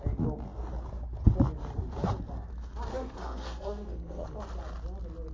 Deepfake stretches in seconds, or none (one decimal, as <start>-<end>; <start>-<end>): 2.9-4.4